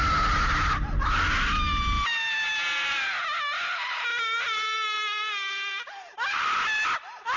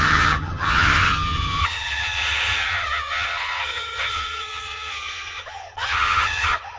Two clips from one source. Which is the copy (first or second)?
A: second